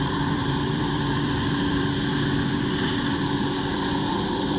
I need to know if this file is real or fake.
fake